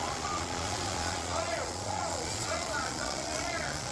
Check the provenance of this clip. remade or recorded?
remade